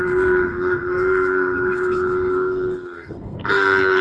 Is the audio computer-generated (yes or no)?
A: yes